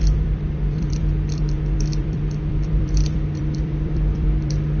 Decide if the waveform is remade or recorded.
remade